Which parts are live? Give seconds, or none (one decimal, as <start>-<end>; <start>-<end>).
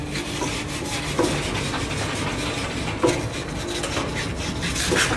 0.0-5.2